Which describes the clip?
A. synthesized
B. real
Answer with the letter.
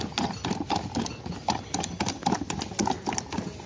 B